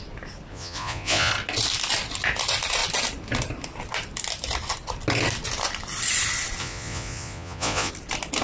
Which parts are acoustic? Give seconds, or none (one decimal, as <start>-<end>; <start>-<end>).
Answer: 0.0-0.5; 1.3-6.6; 7.9-8.4